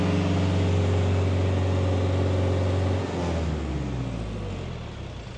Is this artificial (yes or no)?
no